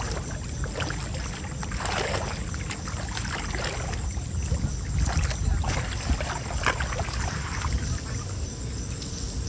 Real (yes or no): yes